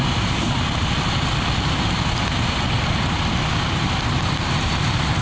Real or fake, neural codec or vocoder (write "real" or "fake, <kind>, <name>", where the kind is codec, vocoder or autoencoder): real